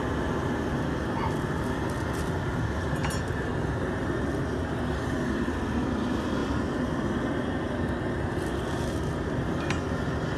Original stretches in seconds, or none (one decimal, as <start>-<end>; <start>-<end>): 0.0-10.4